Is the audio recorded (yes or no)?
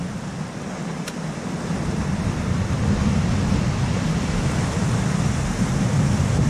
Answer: yes